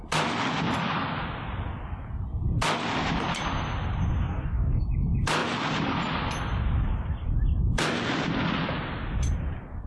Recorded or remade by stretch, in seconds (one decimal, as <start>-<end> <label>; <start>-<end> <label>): 0.0-4.2 recorded; 4.2-4.8 remade; 4.8-9.9 recorded